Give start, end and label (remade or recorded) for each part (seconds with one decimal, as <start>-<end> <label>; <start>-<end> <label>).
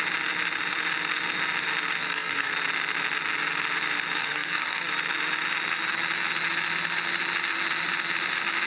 0.0-2.0 recorded; 2.0-2.5 remade; 2.5-4.2 recorded; 4.2-4.9 remade; 4.9-8.7 recorded